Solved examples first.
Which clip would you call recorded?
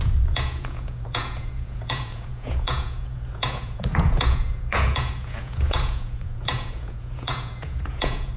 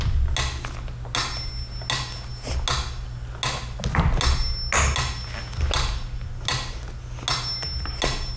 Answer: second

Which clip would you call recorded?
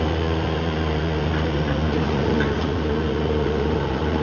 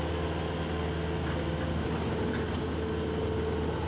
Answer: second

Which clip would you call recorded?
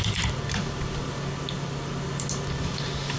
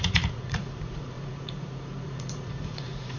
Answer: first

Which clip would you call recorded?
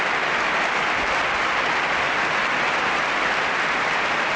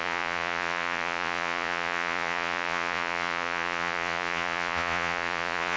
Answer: first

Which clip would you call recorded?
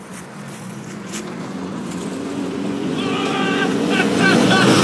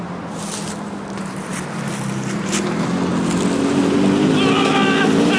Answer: second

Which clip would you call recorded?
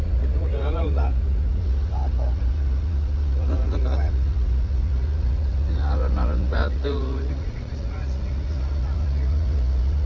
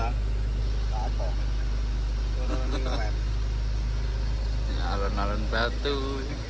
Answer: second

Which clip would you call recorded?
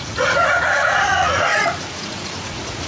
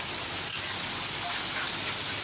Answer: second